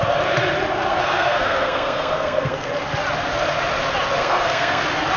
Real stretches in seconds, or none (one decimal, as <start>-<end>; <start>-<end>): 0.0-0.9; 2.7-4.2; 4.8-5.2